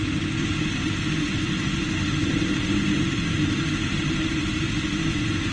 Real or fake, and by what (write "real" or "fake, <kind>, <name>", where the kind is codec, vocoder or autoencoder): real